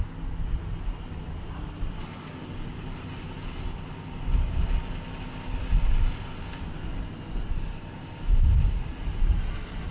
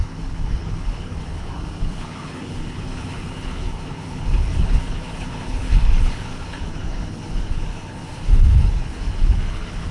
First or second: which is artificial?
second